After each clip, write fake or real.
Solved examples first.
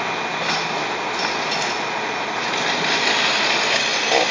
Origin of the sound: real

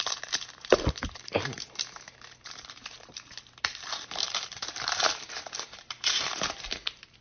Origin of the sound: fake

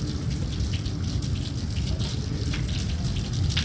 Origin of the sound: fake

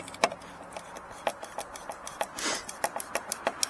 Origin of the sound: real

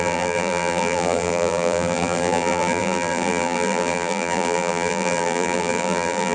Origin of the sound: fake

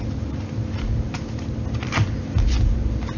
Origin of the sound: real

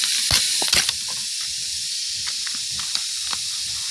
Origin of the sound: real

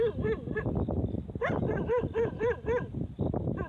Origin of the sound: real